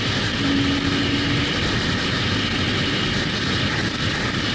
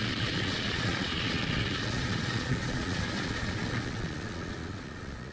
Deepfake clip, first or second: second